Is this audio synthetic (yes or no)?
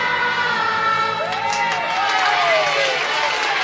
no